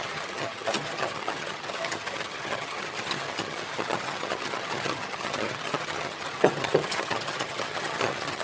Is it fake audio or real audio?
fake